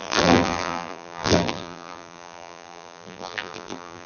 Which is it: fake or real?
fake